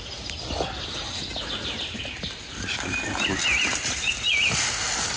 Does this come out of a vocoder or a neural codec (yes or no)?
no